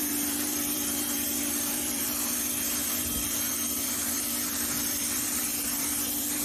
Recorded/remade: remade